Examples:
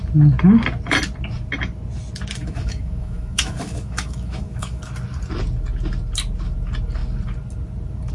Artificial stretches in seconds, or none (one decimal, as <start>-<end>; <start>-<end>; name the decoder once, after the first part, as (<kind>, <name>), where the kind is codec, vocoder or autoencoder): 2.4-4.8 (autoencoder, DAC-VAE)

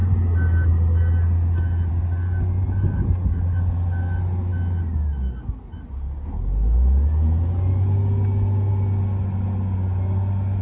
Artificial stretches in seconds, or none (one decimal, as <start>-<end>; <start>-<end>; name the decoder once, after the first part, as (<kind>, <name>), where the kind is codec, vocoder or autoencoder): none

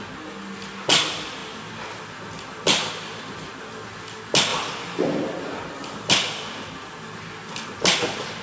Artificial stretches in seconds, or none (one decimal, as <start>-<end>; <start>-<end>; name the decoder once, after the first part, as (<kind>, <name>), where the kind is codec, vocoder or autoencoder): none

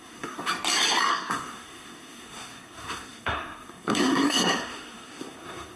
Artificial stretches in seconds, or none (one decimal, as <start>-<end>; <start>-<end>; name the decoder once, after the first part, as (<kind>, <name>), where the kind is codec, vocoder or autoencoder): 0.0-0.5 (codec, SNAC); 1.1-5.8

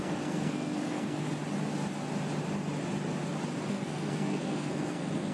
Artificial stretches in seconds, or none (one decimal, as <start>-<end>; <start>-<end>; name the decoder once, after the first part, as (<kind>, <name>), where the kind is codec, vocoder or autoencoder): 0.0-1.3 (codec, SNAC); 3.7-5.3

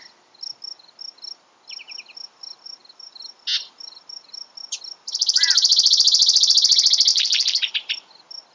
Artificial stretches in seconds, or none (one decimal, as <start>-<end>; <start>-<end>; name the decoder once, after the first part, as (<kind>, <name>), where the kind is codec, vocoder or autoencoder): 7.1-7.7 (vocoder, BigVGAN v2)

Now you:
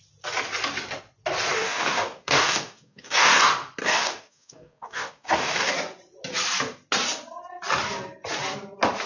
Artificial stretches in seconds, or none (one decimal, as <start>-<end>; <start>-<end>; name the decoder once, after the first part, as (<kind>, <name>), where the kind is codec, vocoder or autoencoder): 1.5-3.4 (codec, DAC); 3.8-5.7